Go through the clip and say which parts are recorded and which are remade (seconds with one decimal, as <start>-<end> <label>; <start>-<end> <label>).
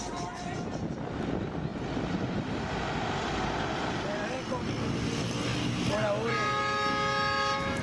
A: 0.0-7.8 recorded